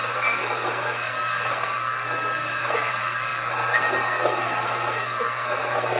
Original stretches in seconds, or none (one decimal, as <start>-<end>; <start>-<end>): none